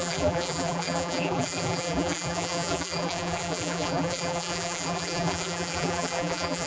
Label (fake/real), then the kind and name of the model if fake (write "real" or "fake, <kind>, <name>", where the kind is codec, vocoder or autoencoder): fake, vocoder, BigVGAN v2